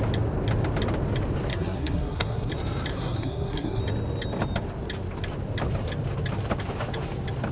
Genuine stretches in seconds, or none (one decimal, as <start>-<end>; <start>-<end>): 0.0-1.5; 2.5-2.9; 3.8-7.5